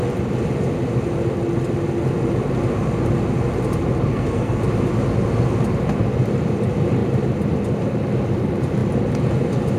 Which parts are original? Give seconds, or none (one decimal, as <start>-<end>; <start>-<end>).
0.0-4.1; 4.6-9.8